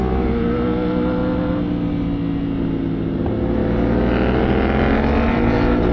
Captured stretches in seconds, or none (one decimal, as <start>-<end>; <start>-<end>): 0.0-5.9